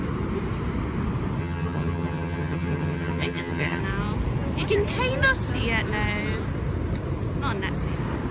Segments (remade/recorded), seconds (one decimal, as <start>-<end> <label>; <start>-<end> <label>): 0.0-1.4 recorded; 1.4-3.8 remade; 3.8-8.3 recorded